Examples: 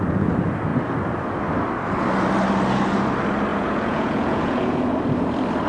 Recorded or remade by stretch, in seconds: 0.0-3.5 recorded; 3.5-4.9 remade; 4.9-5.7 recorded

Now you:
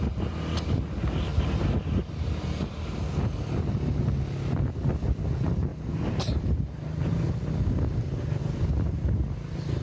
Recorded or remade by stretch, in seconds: 0.0-9.8 recorded

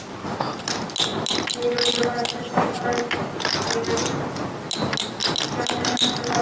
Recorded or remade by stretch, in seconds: 0.0-1.1 recorded; 1.1-4.0 remade; 4.0-6.4 recorded

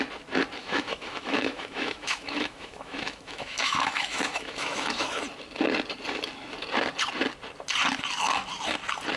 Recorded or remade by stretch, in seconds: 0.0-0.6 recorded; 0.6-5.2 remade; 5.2-9.2 recorded

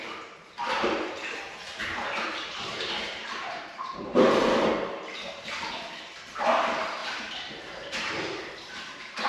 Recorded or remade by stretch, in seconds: 0.0-1.8 recorded; 1.8-4.7 remade; 4.7-7.0 recorded; 7.0-9.3 remade

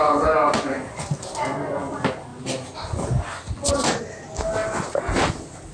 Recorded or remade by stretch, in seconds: 0.0-5.7 recorded

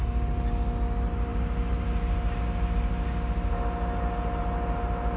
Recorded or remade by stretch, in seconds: 0.0-5.2 recorded